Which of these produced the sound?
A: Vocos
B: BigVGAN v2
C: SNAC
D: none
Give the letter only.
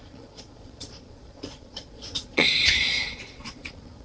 A